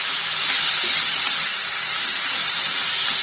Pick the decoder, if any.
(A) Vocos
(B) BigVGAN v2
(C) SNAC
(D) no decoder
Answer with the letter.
D